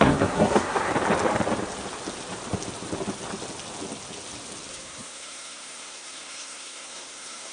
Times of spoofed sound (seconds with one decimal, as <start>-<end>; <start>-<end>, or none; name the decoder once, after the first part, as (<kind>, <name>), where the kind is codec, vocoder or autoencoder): 0.0-0.9 (codec, SNAC); 4.7-7.5